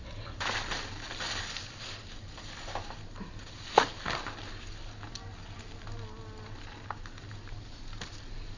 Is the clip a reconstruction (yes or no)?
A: no